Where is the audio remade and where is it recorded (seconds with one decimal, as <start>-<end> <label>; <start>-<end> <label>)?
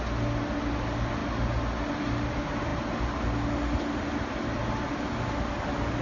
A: 0.0-6.0 recorded